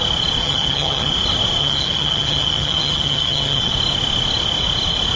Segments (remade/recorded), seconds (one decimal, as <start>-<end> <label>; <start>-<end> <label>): 0.0-0.4 recorded; 0.4-1.1 remade; 1.1-1.6 recorded; 1.6-3.7 remade; 3.7-5.2 recorded

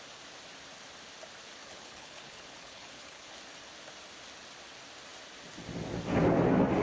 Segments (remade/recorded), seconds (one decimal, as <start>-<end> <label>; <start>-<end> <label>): 0.0-1.6 recorded; 1.6-3.3 remade; 3.3-6.8 recorded